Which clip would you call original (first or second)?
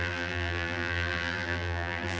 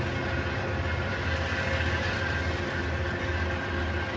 second